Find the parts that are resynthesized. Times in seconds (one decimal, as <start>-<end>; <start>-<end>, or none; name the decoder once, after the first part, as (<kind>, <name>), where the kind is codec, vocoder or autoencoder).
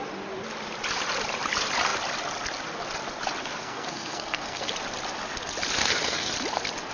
3.4-4.7 (codec, SNAC); 5.8-6.3